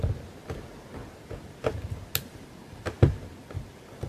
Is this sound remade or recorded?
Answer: recorded